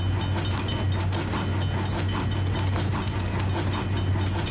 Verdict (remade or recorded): recorded